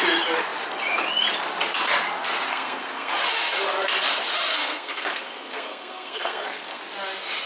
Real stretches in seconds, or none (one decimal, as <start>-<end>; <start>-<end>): 0.0-2.5; 3.1-4.5; 6.8-7.5